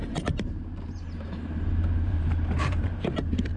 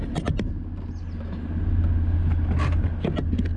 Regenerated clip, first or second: first